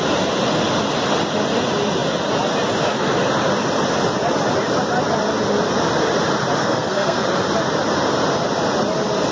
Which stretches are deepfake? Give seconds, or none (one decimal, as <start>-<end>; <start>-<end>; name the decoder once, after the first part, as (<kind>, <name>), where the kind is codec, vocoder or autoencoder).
6.6-7.2 (codec, SNAC)